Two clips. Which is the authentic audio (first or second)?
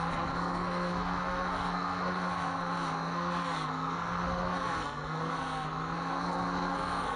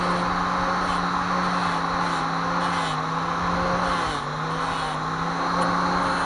second